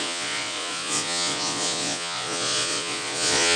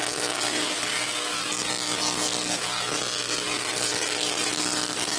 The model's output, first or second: first